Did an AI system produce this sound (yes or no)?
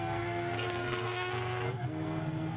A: yes